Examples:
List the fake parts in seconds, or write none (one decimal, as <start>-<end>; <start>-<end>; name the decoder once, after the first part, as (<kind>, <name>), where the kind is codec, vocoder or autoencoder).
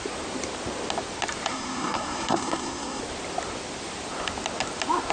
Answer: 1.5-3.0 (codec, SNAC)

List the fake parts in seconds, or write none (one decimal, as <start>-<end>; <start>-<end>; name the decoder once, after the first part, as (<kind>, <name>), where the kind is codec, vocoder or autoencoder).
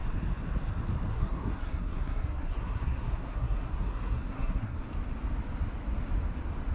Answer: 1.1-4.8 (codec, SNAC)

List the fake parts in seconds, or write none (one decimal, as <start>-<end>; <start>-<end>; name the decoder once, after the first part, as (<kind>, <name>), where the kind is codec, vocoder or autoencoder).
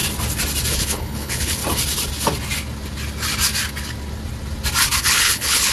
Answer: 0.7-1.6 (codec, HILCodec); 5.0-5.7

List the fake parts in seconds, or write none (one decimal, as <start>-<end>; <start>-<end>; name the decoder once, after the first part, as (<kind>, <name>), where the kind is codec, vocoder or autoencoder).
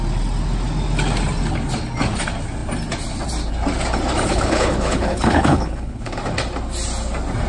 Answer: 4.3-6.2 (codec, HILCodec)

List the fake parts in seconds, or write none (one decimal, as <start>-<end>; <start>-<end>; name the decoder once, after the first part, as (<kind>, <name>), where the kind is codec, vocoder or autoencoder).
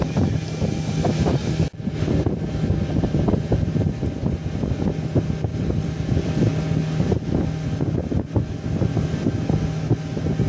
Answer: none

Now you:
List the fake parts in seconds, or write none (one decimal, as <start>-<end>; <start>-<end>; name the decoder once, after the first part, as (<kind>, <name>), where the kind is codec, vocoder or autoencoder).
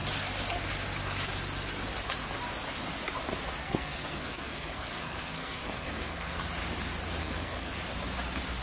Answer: 3.6-6.4 (codec, SNAC); 7.2-7.7